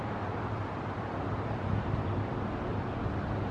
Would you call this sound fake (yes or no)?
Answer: no